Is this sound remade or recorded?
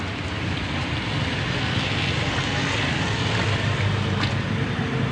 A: recorded